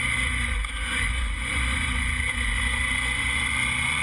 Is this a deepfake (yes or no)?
yes